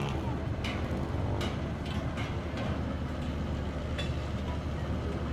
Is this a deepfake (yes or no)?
no